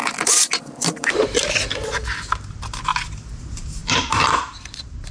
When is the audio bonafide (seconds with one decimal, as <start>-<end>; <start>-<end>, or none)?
0.0-0.6; 1.4-2.5; 2.9-3.4